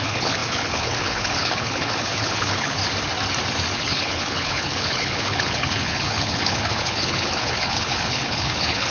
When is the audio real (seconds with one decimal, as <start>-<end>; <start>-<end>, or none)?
2.8-3.7